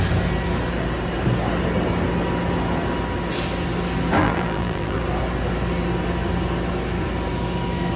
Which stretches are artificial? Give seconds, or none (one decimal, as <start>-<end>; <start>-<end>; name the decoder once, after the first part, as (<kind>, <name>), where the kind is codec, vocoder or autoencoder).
4.2-5.0 (vocoder, BigVGAN v2)